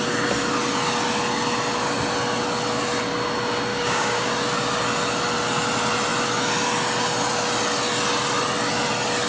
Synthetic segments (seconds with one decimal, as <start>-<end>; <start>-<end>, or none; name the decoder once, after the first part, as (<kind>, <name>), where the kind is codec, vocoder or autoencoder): 3.7-4.3 (codec, DAC)